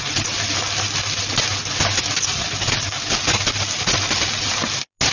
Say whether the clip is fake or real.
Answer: real